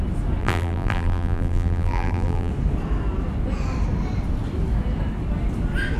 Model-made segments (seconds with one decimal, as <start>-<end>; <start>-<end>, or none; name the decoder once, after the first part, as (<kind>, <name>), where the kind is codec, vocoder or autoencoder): 0.4-2.5 (vocoder, BigVGAN v2)